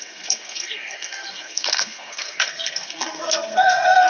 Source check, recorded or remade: remade